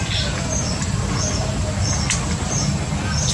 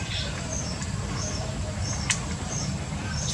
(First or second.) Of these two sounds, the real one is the first